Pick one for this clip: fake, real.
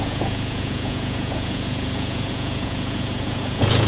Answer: fake